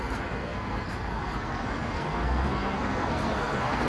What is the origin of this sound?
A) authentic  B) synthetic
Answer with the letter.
B